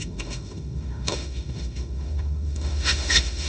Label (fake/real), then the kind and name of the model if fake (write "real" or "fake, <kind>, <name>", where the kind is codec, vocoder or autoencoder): fake, autoencoder, DAC-VAE